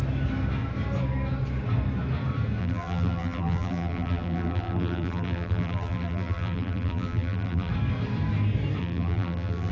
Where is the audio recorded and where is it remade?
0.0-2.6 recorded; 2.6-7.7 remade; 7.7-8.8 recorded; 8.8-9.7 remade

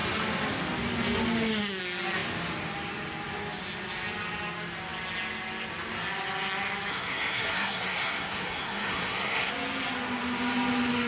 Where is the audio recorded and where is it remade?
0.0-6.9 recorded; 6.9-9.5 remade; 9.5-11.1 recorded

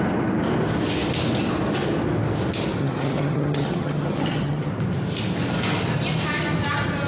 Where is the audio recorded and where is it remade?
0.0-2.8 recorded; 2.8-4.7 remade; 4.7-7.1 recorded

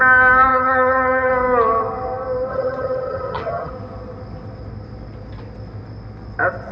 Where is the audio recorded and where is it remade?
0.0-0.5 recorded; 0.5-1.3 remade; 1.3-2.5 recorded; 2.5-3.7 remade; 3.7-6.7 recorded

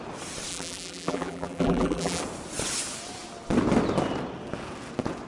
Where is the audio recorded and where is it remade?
0.0-0.5 recorded; 0.5-2.2 remade; 2.2-5.3 recorded

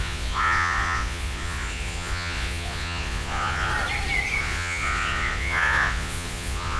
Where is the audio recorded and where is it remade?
0.0-3.7 remade; 3.7-4.4 recorded; 4.4-6.8 remade